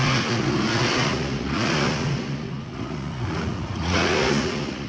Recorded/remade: remade